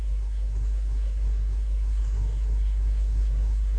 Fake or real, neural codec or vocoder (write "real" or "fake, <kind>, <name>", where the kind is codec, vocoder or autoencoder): fake, codec, SNAC